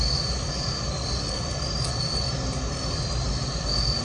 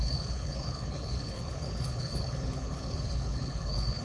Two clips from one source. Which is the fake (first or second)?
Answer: second